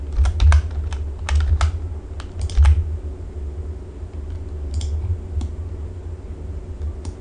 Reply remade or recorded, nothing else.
recorded